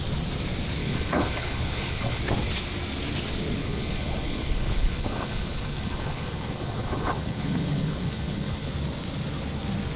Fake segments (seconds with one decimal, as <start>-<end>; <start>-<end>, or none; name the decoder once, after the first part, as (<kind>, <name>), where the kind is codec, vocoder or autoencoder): 0.8-2.2 (codec, HILCodec); 3.6-8.7